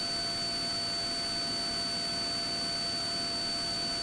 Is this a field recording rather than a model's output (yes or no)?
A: yes